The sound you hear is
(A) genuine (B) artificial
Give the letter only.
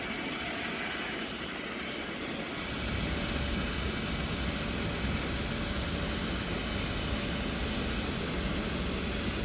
A